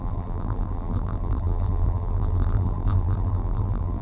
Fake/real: fake